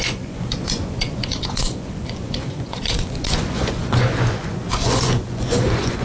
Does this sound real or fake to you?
fake